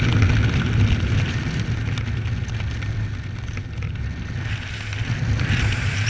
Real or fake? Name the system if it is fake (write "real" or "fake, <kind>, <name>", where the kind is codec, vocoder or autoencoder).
real